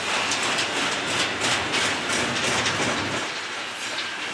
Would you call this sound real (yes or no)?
yes